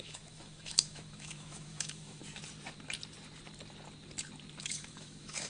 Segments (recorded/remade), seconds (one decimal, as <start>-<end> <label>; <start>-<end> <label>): 0.0-2.2 remade; 2.2-4.6 recorded; 4.6-5.5 remade

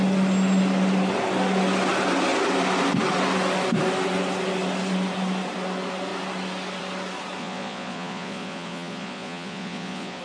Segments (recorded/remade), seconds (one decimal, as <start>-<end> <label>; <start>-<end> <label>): 0.0-7.4 recorded; 7.4-10.2 remade

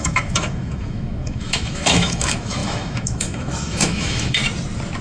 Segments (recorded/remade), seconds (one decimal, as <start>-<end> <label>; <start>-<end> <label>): 0.0-4.4 remade; 4.4-5.0 recorded

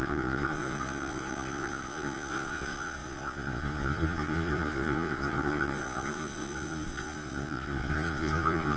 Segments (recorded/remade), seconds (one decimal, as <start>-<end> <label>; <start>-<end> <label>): 0.0-8.8 remade

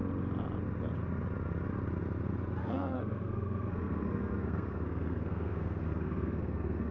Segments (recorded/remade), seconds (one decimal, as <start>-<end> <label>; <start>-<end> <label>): 0.0-2.6 recorded; 2.6-6.9 remade

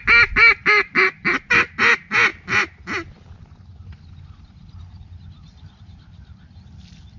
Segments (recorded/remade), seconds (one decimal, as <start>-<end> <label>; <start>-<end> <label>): 0.0-7.2 recorded

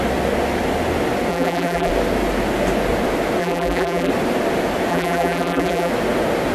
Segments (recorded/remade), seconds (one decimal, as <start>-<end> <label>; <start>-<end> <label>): 0.0-1.3 recorded; 1.3-1.9 remade; 1.9-3.4 recorded; 3.4-4.1 remade; 4.1-4.9 recorded; 4.9-5.9 remade; 5.9-6.5 recorded

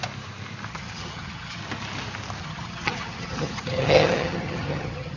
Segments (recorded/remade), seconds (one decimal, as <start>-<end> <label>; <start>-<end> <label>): 0.0-0.7 recorded; 0.7-1.6 remade; 1.6-2.4 recorded; 2.4-5.2 remade